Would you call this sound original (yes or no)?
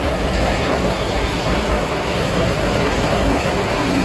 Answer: no